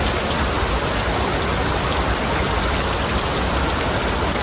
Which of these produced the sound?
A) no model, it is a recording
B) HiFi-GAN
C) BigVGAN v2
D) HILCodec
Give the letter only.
A